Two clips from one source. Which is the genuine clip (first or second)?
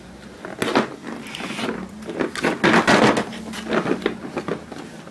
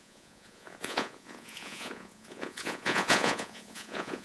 first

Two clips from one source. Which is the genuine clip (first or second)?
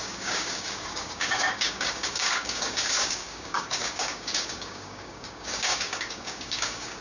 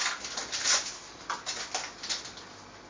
second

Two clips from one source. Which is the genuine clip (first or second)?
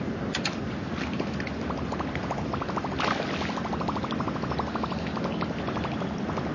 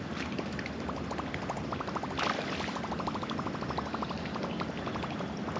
first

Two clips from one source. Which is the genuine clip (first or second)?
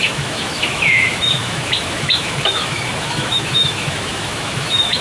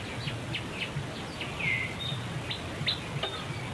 second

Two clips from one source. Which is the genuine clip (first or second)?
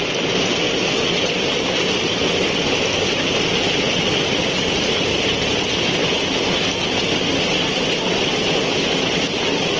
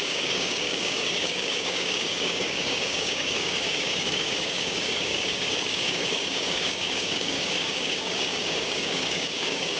first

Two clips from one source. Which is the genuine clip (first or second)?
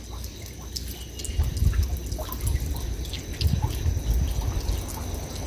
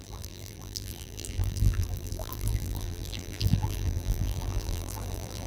first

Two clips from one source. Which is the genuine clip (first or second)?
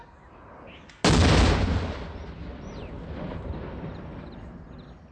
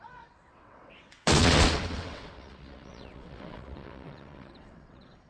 first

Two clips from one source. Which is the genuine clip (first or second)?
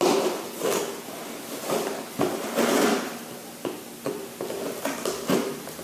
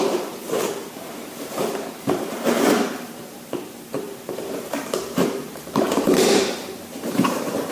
first